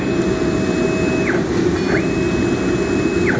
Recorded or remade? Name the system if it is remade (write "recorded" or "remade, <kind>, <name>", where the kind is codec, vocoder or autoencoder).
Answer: recorded